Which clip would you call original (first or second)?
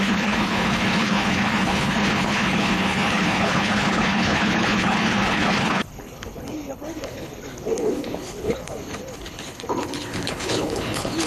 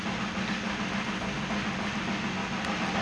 second